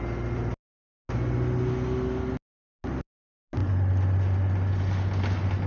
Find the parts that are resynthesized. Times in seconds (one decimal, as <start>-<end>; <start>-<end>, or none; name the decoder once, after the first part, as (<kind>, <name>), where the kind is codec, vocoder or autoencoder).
none